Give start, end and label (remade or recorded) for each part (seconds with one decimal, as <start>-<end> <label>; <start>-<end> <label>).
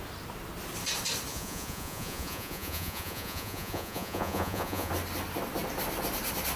0.0-1.3 recorded; 1.3-4.9 remade; 4.9-6.6 recorded